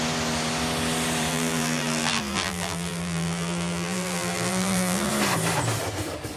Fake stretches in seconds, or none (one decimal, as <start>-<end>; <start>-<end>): 1.3-5.1